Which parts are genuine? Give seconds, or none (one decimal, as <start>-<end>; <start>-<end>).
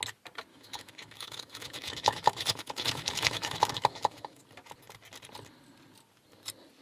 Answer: 0.0-0.5; 4.4-6.8